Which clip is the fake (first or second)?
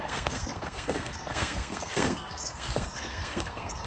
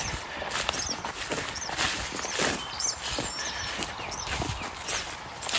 first